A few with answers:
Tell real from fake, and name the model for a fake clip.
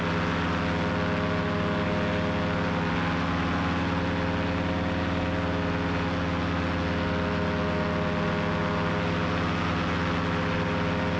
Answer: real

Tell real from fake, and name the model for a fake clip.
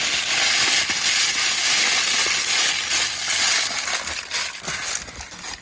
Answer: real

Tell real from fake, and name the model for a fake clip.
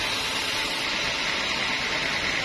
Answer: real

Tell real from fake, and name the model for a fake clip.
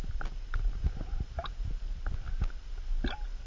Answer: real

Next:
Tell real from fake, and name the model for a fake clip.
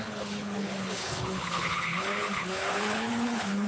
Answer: fake, codec, HILCodec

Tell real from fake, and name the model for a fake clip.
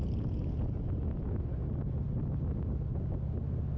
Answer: real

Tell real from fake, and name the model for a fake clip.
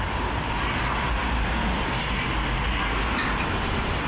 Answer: real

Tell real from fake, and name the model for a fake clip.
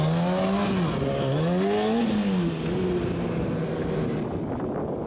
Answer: real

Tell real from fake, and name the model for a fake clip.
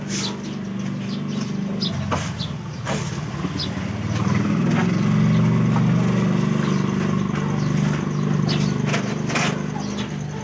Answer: real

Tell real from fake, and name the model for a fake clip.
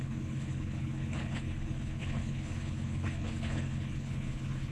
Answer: fake, codec, HILCodec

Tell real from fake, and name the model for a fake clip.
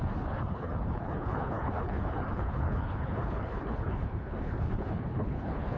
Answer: fake, codec, HILCodec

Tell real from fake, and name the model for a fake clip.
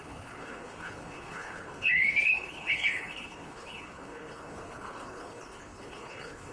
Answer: fake, codec, HILCodec